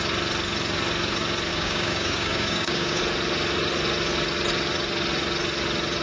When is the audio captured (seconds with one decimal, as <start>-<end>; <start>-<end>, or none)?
0.0-1.5; 3.0-6.0